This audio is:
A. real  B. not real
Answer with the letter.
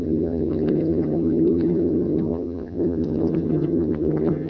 B